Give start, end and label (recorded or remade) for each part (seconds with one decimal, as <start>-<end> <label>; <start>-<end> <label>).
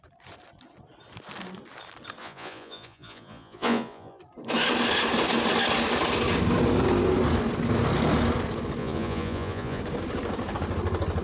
0.0-2.2 recorded; 2.2-4.2 remade; 4.2-8.8 recorded; 8.8-9.8 remade; 9.8-11.2 recorded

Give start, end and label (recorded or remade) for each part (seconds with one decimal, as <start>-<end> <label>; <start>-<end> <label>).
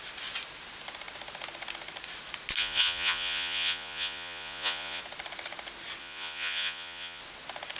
0.0-2.6 recorded; 2.6-5.0 remade; 5.0-6.0 recorded; 6.0-7.2 remade; 7.2-7.8 recorded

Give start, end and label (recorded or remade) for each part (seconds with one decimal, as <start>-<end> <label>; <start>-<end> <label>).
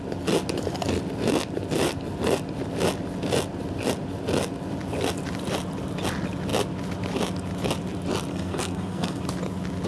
0.0-8.3 recorded; 8.3-9.2 remade; 9.2-9.9 recorded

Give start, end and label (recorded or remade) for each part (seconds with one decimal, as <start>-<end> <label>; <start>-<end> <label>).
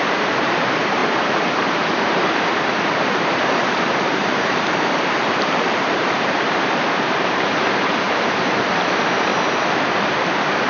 0.0-9.3 remade; 9.3-10.0 recorded; 10.0-10.7 remade